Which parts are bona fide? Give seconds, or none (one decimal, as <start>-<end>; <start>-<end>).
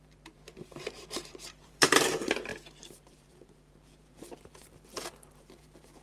none